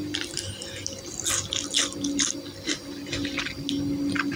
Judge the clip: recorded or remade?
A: recorded